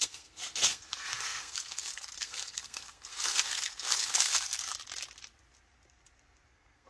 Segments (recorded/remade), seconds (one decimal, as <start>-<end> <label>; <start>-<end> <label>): 0.0-4.7 remade; 4.7-6.5 recorded; 6.5-6.9 remade